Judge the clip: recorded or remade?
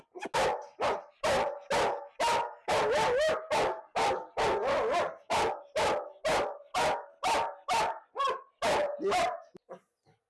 recorded